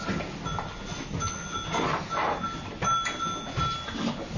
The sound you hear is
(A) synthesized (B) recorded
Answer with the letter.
B